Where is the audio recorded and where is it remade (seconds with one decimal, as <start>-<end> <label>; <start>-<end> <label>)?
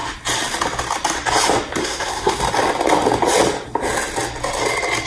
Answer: 0.0-1.8 recorded; 1.8-2.4 remade; 2.4-5.1 recorded